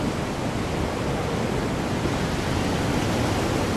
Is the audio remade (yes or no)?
no